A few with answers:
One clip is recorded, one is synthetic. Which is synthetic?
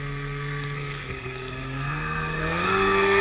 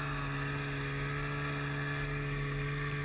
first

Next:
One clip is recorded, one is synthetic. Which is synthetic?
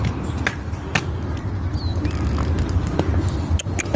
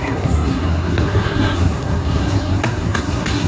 second